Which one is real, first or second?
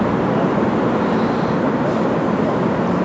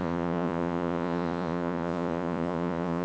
first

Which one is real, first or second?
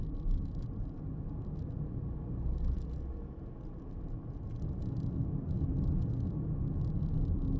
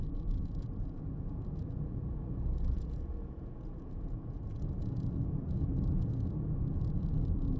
first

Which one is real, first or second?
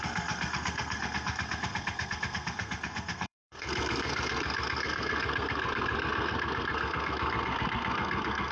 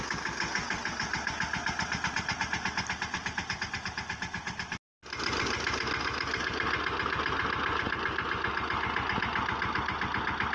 second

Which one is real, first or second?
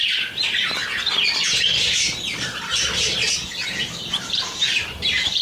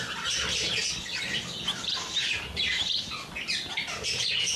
second